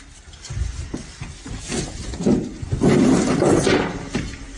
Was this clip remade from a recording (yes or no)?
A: no